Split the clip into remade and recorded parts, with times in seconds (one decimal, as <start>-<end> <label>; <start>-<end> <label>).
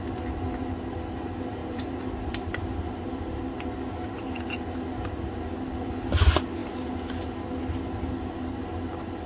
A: 0.0-1.6 recorded; 1.6-3.4 remade; 3.4-9.3 recorded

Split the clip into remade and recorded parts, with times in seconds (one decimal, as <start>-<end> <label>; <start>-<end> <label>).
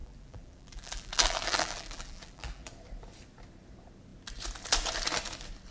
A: 0.0-2.7 remade; 2.7-5.7 recorded